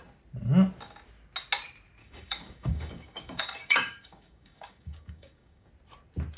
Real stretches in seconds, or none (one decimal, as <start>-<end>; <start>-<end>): 0.0-2.0; 5.7-6.4